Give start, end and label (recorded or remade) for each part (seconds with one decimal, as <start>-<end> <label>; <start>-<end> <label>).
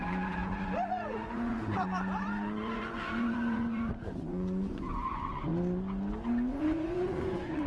0.0-5.5 remade; 5.5-6.5 recorded; 6.5-7.7 remade